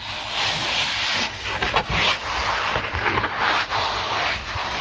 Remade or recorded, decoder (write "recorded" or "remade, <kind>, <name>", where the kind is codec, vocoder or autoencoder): recorded